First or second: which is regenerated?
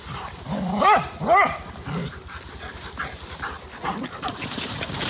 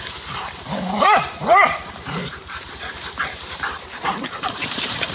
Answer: second